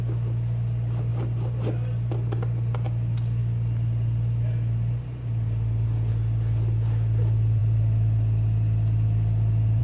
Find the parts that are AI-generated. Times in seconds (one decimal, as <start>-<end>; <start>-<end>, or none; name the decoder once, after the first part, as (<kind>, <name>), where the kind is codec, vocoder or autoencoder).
1.1-2.7 (vocoder, BigVGAN v2); 7.6-9.8